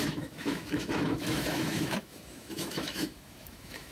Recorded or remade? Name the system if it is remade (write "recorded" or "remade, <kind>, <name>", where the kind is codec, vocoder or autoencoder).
remade, autoencoder, DAC-VAE